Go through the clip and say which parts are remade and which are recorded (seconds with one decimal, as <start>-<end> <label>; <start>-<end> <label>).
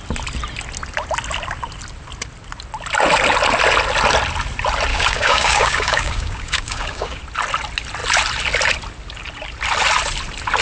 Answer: 0.0-4.9 recorded; 4.9-7.2 remade; 7.2-10.6 recorded